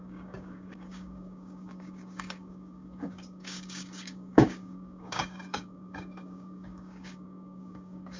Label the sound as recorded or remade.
remade